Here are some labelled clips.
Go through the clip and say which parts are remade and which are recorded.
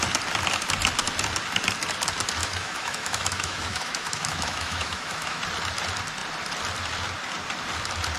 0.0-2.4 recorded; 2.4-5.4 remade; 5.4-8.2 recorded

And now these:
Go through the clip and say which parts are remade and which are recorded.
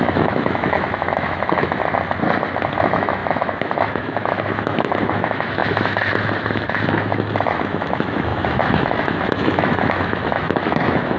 0.0-1.8 remade; 1.8-2.8 recorded; 2.8-11.2 remade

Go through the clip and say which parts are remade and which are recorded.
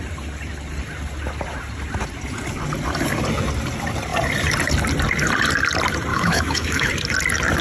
0.0-6.1 recorded; 6.1-6.9 remade; 6.9-7.6 recorded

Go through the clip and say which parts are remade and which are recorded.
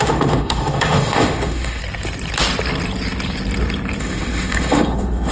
0.0-1.8 remade; 1.8-4.0 recorded; 4.0-5.3 remade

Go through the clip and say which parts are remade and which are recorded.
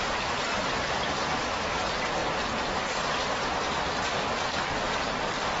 0.0-5.6 recorded